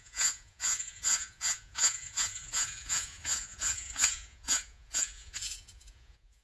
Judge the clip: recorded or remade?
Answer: remade